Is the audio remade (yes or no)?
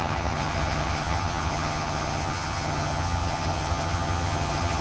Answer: yes